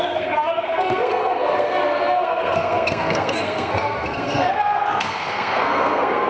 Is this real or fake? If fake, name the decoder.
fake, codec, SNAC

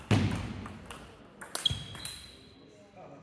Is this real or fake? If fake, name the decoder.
real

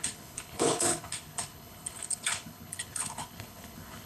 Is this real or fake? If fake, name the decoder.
fake, codec, HILCodec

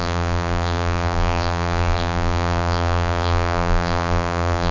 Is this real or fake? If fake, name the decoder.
fake, vocoder, BigVGAN v2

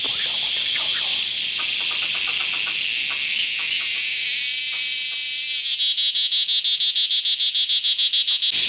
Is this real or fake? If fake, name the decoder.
real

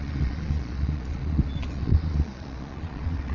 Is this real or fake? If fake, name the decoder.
fake, vocoder, Vocos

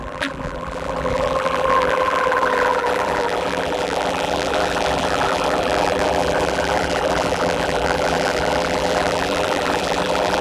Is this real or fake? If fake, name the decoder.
fake, vocoder, BigVGAN v2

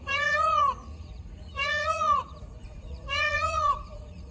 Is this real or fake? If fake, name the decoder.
fake, vocoder, Vocos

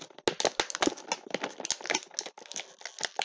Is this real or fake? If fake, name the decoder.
real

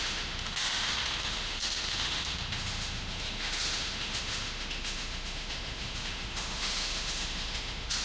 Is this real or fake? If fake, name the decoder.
fake, autoencoder, DAC-VAE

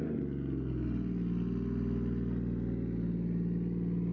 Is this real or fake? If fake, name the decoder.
real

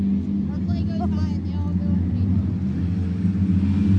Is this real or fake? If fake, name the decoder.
real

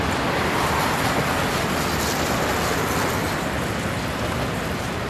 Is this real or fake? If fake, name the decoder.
real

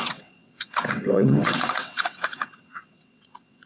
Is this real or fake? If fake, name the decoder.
fake, vocoder, WaveNeXt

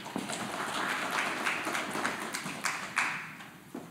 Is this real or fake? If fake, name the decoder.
real